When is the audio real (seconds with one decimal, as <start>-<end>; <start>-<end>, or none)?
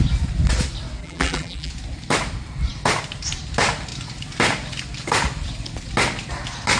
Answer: 0.0-1.0; 1.7-6.8